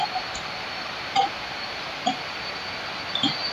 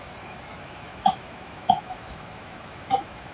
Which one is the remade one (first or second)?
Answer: second